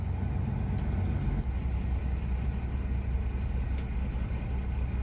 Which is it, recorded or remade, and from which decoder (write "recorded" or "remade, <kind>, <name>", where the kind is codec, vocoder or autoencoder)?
recorded